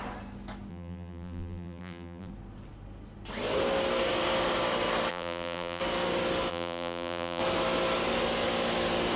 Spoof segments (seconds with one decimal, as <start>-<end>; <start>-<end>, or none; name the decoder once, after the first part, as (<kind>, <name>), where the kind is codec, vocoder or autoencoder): 0.7-2.3 (vocoder, BigVGAN v2); 5.1-5.8; 6.5-7.4

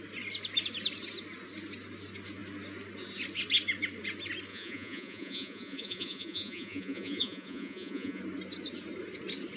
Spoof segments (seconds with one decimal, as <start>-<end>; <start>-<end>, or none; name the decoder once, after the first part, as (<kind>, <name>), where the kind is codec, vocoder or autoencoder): 4.5-8.2 (vocoder, Vocos)

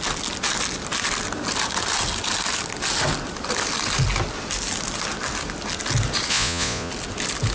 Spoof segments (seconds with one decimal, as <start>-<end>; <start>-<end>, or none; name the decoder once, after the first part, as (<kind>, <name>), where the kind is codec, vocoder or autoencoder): 6.3-6.9 (vocoder, Vocos)

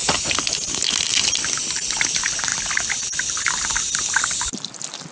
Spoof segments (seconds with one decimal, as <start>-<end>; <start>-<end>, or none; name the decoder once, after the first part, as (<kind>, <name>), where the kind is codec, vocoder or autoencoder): none

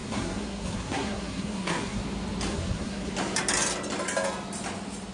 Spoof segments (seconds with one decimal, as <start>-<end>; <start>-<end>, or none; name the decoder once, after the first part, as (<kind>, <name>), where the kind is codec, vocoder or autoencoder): 0.0-2.0 (codec, SNAC); 2.5-3.1